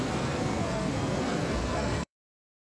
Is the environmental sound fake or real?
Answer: fake